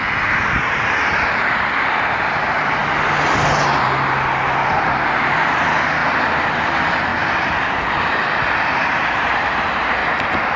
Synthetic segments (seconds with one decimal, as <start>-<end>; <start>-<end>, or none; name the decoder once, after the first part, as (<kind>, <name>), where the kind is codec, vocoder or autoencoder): 0.0-6.0 (vocoder, BigVGAN v2); 6.6-10.0